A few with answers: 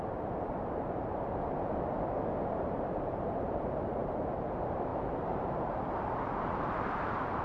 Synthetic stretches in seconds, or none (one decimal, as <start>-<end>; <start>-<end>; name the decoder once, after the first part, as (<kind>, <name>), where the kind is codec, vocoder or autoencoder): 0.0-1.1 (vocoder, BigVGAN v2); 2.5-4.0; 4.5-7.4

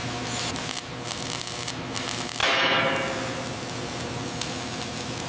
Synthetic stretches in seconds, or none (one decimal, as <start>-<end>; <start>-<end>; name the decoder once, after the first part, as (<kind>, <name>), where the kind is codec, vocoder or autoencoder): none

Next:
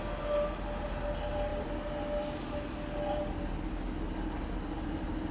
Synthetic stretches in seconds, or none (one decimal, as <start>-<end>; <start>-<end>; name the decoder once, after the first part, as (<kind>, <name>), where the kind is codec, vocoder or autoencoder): none

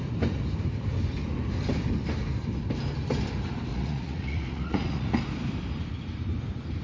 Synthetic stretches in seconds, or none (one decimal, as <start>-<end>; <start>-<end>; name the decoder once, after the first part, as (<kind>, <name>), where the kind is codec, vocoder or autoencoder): 3.7-5.2 (vocoder, Vocos)

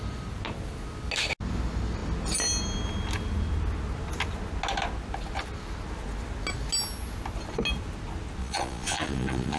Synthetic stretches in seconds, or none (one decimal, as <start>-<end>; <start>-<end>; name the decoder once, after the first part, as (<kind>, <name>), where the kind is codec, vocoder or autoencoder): 8.4-9.6 (vocoder, Vocos)

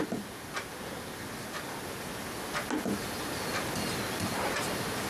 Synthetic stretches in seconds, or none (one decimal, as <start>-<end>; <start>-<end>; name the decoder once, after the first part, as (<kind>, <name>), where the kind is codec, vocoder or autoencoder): none